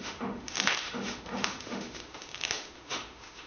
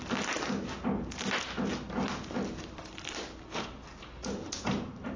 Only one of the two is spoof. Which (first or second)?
first